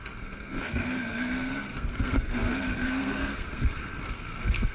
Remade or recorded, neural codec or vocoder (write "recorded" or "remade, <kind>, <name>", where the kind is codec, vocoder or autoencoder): remade, codec, SNAC